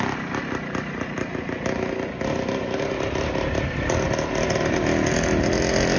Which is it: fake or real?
real